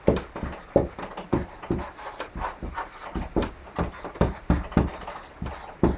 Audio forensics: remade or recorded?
recorded